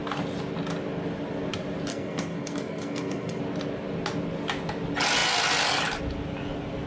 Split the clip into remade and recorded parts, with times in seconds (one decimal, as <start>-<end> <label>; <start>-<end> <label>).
0.0-1.9 recorded; 1.9-3.4 remade; 3.4-6.9 recorded